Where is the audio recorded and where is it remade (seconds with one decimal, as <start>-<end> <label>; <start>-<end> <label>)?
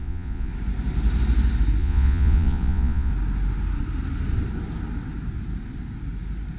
0.0-0.5 remade; 0.5-1.8 recorded; 1.8-3.1 remade; 3.1-6.6 recorded